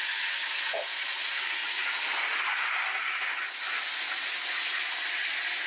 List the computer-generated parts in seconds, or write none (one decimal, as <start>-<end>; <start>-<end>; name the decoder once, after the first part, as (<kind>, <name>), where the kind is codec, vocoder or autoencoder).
none